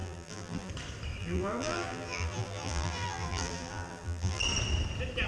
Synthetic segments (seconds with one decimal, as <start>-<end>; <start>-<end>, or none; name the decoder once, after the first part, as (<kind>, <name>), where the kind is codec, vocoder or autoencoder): 0.0-0.7 (vocoder, BigVGAN v2); 1.2-4.4